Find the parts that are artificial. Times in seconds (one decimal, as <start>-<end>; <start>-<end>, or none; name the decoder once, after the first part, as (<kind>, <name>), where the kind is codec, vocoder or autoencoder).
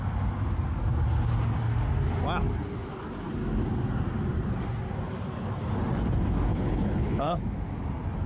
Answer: 6.5-7.4 (codec, HILCodec)